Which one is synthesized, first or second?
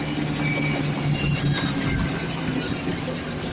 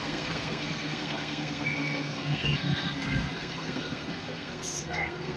second